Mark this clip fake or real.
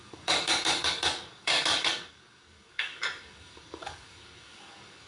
fake